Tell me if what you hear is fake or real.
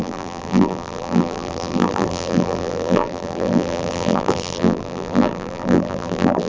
fake